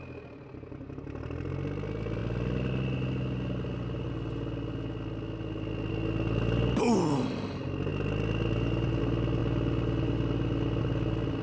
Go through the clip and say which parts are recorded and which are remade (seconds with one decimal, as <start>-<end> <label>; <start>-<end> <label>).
0.0-11.4 recorded